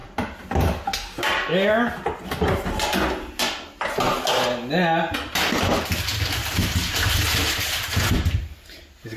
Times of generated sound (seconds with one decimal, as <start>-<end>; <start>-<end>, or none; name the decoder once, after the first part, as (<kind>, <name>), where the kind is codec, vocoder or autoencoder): 6.4-9.2 (vocoder, BigVGAN v2)